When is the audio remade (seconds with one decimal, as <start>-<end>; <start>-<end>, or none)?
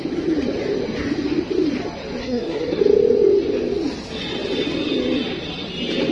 2.2-2.8